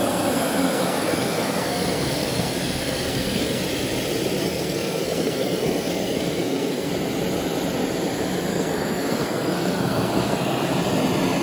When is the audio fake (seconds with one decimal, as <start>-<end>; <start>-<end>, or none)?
0.0-3.6; 4.4-6.9; 8.5-10.7